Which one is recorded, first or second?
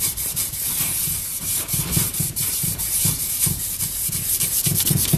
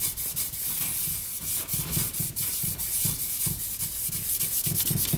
second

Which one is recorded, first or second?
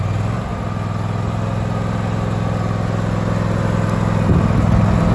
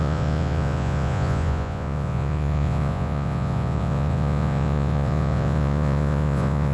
first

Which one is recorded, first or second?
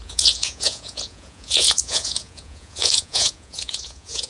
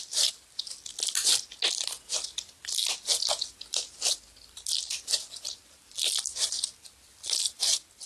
second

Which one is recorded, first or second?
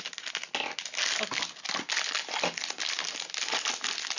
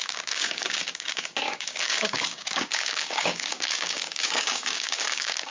first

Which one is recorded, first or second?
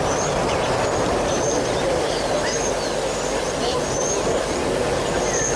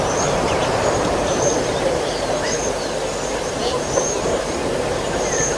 first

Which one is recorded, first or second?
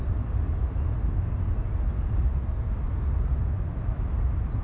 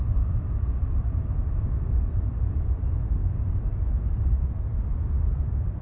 first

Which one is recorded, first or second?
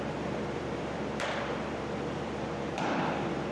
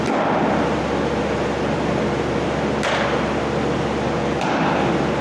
second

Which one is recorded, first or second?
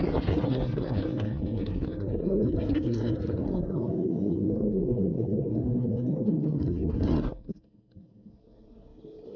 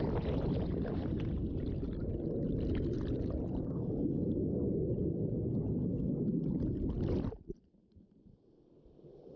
second